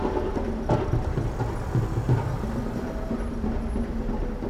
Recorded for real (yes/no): yes